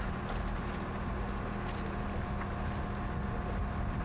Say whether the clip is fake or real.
real